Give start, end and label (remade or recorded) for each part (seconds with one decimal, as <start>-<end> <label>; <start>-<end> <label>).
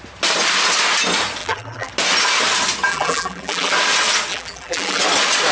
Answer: 0.0-1.4 recorded; 1.4-1.9 remade; 1.9-2.9 recorded; 2.9-3.7 remade; 3.7-4.3 recorded; 4.3-5.0 remade; 5.0-5.5 recorded